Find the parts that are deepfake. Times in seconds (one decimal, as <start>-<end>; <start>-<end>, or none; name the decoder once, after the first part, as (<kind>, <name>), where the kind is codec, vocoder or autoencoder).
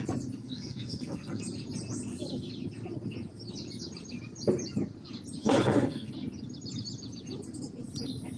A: 0.4-1.4 (codec, SNAC); 5.4-6.1